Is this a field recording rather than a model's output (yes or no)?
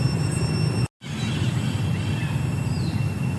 yes